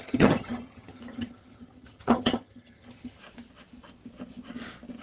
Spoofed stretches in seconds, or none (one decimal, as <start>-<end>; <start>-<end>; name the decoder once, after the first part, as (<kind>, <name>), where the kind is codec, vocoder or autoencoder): 0.0-3.2 (vocoder, HiFi-GAN)